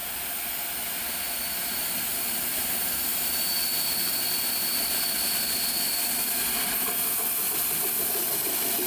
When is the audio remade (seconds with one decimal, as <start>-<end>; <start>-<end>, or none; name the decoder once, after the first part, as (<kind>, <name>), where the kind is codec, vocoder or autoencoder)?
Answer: 0.0-0.5 (vocoder, BigVGAN v2)